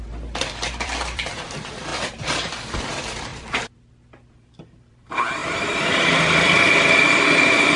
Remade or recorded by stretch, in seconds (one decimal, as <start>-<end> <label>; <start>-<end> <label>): 0.0-3.3 remade; 3.3-4.3 recorded; 4.3-7.8 remade